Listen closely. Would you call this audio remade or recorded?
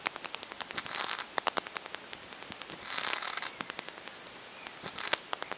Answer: recorded